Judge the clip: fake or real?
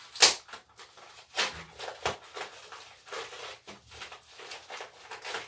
real